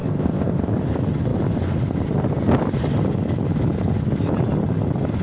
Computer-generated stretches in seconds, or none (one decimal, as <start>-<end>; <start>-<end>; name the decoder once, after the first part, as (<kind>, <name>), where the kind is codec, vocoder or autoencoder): 0.0-0.7 (codec, ZipCodec)